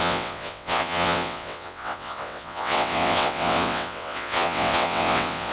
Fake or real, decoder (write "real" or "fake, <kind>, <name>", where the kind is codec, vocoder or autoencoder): fake, vocoder, WaveNeXt